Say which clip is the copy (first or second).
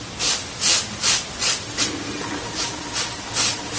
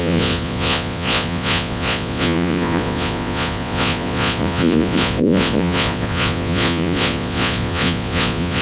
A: second